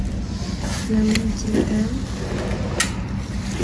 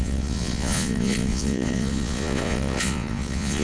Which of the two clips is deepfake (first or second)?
second